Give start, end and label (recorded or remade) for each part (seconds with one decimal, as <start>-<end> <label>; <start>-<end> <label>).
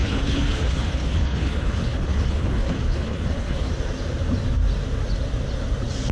0.0-3.7 remade; 3.7-6.1 recorded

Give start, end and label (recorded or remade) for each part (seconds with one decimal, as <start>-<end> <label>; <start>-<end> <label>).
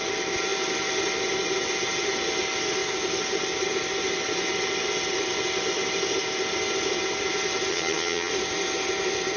0.0-7.7 recorded; 7.7-8.3 remade; 8.3-9.4 recorded